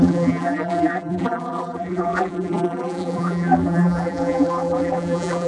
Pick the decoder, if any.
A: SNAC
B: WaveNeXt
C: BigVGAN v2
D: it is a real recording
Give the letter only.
C